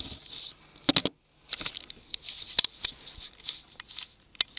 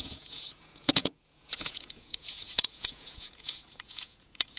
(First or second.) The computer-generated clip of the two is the second